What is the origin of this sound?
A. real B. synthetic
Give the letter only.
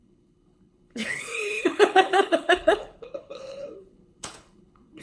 B